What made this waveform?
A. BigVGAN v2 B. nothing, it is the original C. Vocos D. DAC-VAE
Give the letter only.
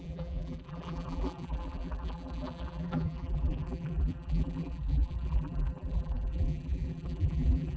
A